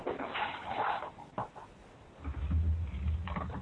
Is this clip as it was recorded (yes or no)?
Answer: yes